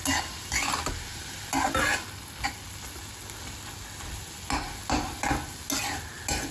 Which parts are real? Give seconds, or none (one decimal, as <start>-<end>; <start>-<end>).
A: 0.0-6.5

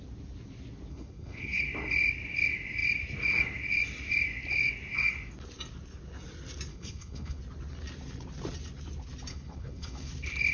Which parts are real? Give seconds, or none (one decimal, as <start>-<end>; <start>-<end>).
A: 0.0-0.9; 1.6-6.7; 7.4-9.3; 10.1-10.5

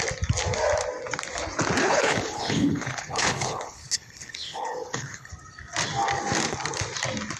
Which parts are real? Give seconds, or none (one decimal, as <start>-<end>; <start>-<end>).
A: 0.0-1.8; 5.3-7.4

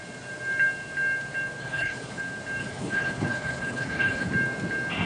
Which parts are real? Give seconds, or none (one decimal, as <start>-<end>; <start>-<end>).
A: 0.0-1.6; 2.2-2.6; 4.3-5.1

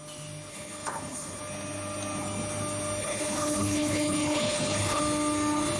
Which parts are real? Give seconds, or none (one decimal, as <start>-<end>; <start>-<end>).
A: 0.0-0.5; 1.4-3.0; 5.0-5.8

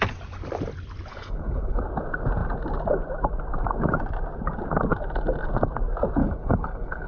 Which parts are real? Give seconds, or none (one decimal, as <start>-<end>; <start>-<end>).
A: 0.0-1.1; 1.8-6.2

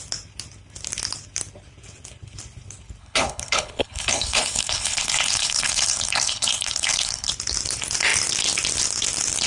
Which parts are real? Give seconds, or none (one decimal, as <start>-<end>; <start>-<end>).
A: 0.0-3.0; 7.3-9.5